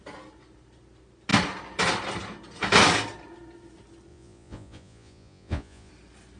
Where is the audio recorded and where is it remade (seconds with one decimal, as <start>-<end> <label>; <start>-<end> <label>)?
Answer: 0.0-4.1 recorded; 4.1-5.9 remade; 5.9-6.4 recorded